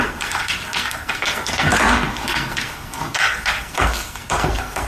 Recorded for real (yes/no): no